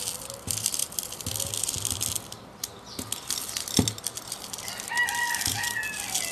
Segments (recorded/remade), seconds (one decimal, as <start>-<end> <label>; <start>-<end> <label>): 0.0-6.3 recorded